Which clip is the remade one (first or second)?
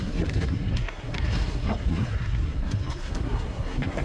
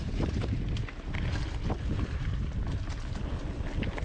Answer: first